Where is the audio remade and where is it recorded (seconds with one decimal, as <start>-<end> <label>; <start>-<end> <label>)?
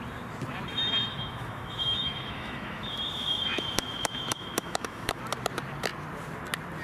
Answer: 0.0-1.1 recorded; 1.1-5.2 remade; 5.2-6.8 recorded